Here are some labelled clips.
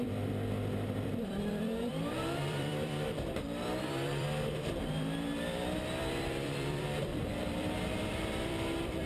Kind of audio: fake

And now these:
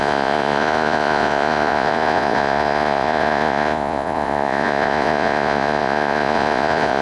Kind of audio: fake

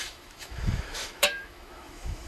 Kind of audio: fake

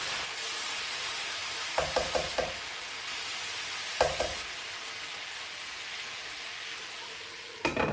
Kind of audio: real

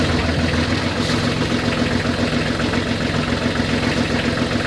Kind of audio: real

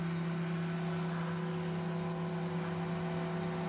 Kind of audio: real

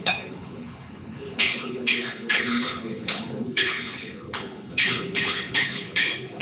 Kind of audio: fake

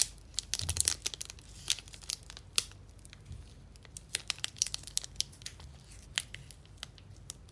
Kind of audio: real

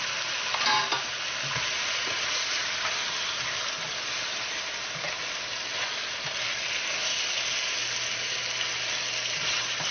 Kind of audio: real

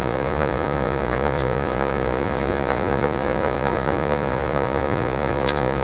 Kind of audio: fake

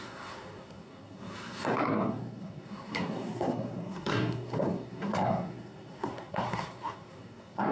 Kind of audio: fake